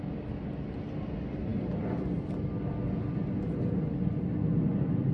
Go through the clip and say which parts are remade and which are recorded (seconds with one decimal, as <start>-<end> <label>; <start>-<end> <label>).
0.0-5.1 recorded